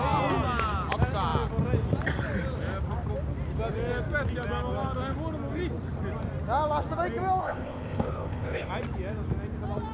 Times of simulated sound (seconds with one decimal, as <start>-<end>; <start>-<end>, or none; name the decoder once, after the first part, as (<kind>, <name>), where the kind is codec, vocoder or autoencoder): 7.4-8.7 (codec, ZipCodec)